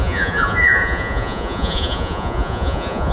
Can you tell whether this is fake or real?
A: fake